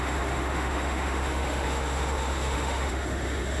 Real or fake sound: fake